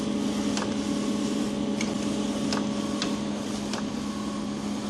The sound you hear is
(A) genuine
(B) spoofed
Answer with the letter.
A